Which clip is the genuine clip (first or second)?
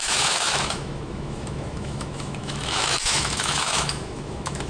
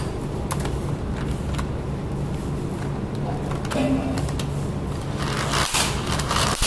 second